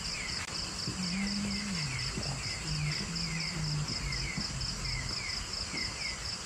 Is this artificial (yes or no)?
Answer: no